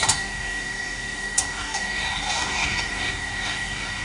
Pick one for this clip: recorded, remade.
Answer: remade